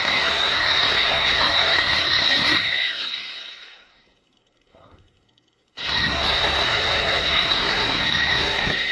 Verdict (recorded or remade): remade